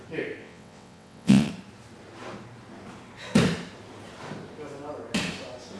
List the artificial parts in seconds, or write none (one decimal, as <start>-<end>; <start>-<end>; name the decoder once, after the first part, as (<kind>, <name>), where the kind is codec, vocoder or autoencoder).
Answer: 0.4-1.5 (vocoder, WaveNeXt)